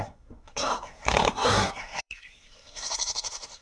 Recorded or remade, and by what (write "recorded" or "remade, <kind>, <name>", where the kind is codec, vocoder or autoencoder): remade, codec, SNAC